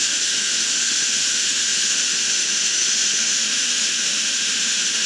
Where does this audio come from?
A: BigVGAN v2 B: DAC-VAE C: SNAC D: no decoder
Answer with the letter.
B